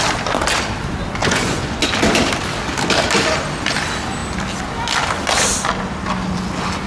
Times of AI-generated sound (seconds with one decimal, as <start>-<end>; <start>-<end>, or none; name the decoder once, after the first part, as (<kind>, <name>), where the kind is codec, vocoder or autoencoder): 1.2-1.8 (vocoder, Vocos)